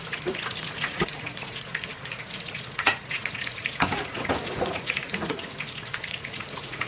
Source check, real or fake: fake